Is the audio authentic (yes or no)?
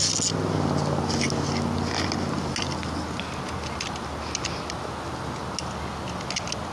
yes